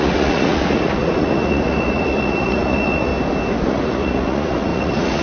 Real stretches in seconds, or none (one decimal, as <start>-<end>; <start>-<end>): 3.1-3.6